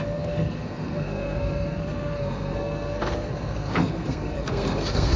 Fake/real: fake